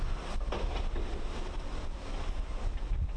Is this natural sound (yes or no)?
yes